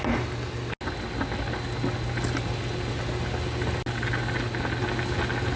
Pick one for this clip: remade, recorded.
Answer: recorded